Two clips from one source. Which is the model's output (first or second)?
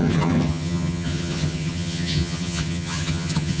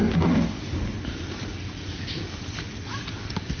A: first